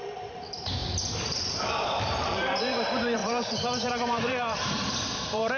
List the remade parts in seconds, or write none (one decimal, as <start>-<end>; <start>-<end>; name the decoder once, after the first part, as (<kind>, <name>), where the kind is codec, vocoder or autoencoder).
0.0-5.6 (vocoder, BigVGAN v2)